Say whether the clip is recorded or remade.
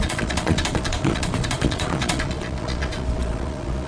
remade